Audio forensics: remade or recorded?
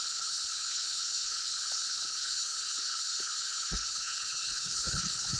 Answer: remade